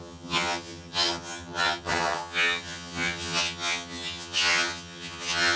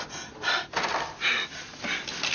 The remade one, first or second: first